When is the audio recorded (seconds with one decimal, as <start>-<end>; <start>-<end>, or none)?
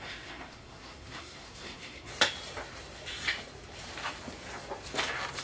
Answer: 2.1-5.4